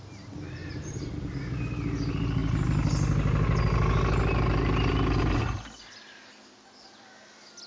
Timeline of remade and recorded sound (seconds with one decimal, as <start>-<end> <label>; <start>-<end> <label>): 0.0-0.6 recorded; 0.6-1.4 remade; 1.4-7.7 recorded